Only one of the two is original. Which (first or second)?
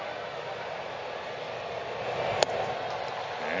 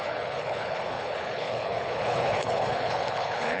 first